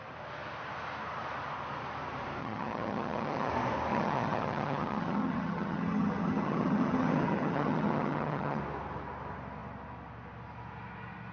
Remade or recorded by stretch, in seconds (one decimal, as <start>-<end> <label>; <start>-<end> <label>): 0.0-2.4 recorded; 2.4-3.5 remade; 3.5-3.9 recorded; 3.9-8.6 remade; 8.6-11.3 recorded